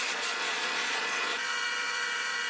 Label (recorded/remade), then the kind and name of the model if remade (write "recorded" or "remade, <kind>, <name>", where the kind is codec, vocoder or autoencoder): remade, vocoder, Vocos